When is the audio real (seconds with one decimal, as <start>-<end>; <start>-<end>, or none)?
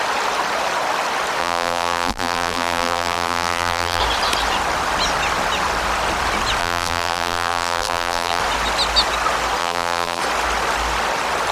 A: 0.0-1.4; 4.0-6.6; 8.4-9.6; 10.2-11.5